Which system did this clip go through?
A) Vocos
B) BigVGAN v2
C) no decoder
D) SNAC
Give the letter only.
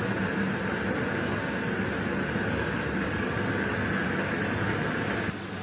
C